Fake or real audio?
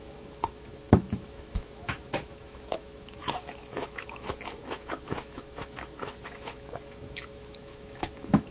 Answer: fake